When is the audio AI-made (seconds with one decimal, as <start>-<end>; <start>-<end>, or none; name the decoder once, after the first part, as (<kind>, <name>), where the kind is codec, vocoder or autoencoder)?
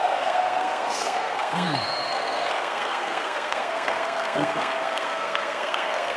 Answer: 0.0-6.2 (codec, SNAC)